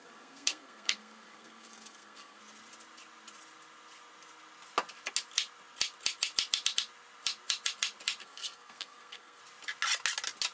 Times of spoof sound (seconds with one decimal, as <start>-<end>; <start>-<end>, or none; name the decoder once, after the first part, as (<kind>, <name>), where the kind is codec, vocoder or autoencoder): 0.0-2.4 (codec, SNAC); 8.2-9.4